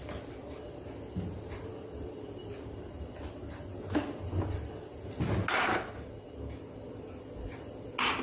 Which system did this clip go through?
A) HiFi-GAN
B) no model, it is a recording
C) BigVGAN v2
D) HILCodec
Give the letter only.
B